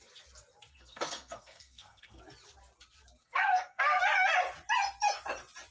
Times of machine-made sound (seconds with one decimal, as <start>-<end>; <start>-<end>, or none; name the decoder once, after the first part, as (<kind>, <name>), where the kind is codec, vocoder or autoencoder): 0.7-2.2 (codec, SNAC); 3.2-4.0